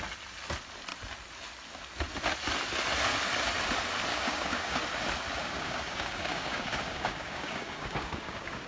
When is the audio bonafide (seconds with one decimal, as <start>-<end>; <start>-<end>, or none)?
0.0-4.1; 4.8-5.4